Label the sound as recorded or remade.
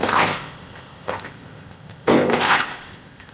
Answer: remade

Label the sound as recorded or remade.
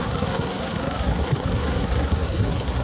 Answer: remade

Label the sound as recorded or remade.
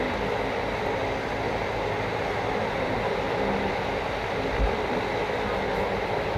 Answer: recorded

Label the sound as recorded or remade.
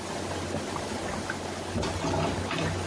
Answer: recorded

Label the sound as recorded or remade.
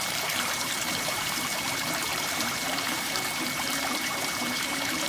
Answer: remade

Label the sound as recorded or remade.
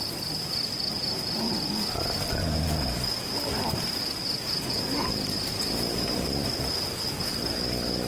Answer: recorded